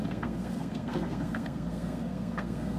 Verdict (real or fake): fake